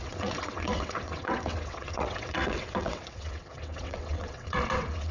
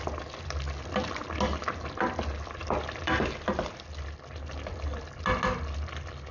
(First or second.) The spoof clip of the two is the first